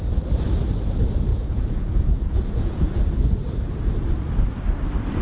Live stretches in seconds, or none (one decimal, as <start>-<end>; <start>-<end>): 0.0-1.3; 3.0-5.2